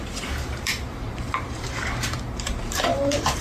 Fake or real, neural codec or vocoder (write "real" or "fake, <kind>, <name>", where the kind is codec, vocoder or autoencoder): fake, vocoder, BigVGAN v2